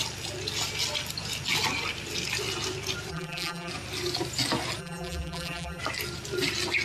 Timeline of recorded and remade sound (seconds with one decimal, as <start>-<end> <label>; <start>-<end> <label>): 0.0-3.1 recorded; 3.1-3.7 remade; 3.7-4.8 recorded; 4.8-5.8 remade; 5.8-6.8 recorded